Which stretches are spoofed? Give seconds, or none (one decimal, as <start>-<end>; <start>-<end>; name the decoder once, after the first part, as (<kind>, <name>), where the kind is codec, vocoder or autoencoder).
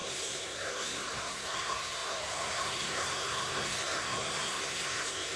0.0-5.4 (codec, SNAC)